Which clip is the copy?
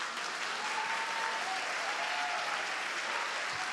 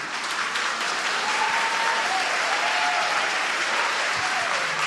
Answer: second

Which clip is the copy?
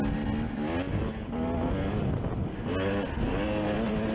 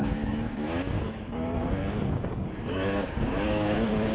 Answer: second